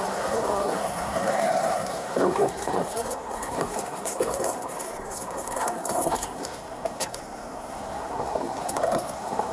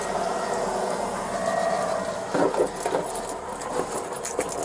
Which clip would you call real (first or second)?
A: second